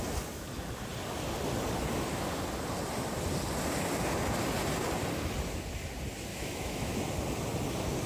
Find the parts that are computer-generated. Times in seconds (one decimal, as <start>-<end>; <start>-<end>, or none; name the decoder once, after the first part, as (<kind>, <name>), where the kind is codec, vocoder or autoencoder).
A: 6.3-7.0 (autoencoder, DAC-VAE)